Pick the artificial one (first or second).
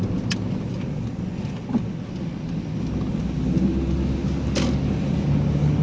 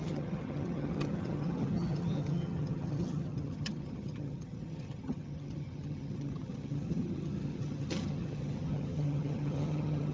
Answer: second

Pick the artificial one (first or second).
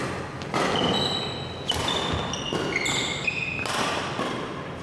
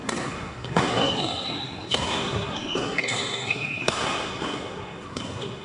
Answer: second